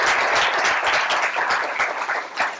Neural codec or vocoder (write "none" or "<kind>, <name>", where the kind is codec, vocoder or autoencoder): none